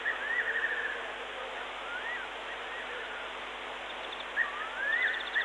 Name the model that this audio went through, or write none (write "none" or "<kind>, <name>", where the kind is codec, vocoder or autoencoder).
none